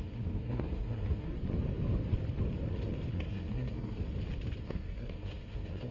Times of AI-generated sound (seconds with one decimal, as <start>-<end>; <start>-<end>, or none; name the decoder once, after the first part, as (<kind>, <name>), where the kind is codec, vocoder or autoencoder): 0.0-1.3 (codec, SNAC); 3.1-4.0; 4.6-5.9